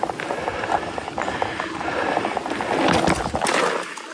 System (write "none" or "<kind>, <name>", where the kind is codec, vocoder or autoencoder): none